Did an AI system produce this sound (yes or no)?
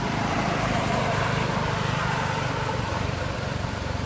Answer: yes